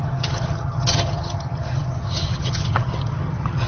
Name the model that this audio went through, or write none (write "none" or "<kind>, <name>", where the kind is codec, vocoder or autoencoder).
vocoder, HiFi-GAN